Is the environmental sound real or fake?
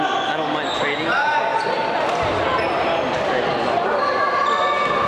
real